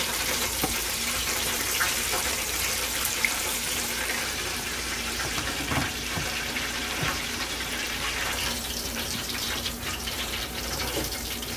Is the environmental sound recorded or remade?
remade